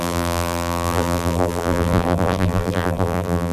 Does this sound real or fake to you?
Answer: fake